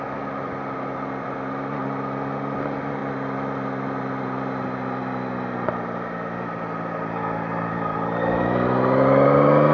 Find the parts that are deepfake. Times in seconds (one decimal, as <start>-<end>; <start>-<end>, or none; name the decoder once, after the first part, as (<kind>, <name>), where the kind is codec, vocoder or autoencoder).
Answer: none